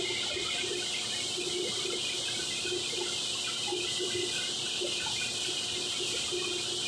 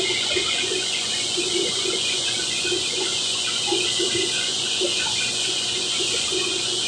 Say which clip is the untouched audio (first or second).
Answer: first